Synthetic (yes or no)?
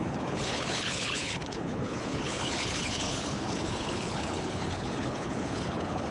yes